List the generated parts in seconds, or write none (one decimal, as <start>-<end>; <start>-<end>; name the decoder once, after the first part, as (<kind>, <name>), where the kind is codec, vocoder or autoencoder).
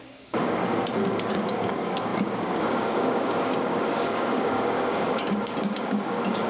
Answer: 0.0-0.6 (codec, DAC); 1.3-6.5